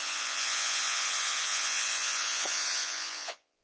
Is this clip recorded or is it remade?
remade